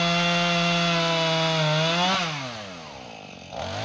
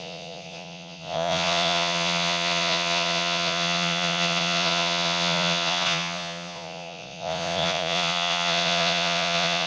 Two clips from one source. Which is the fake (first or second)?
second